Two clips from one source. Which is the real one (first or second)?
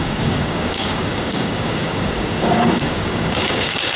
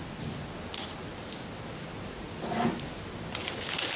second